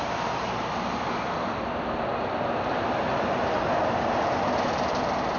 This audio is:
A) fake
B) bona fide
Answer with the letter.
B